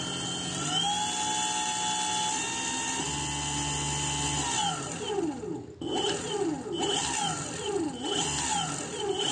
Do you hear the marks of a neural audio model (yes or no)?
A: no